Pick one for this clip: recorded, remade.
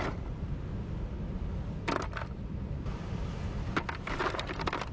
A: recorded